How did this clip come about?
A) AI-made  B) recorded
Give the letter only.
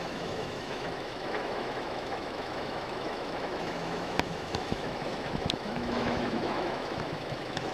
A